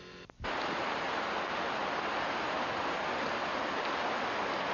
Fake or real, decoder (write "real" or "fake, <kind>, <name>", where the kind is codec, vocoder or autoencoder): real